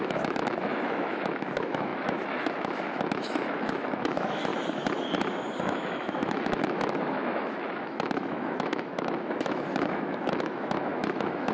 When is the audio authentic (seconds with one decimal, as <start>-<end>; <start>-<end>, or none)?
4.5-5.6